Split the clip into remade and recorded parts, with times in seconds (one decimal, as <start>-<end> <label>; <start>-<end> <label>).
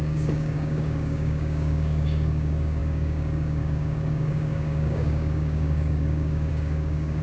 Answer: 0.0-7.2 remade